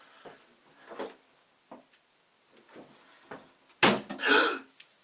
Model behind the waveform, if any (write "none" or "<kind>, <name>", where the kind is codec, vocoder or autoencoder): none